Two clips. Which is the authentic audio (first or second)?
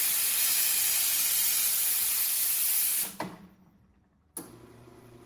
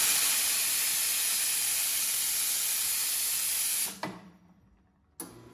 second